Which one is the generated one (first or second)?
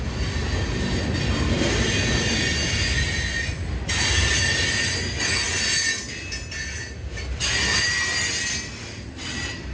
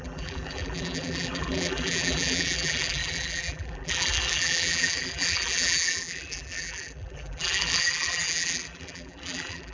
second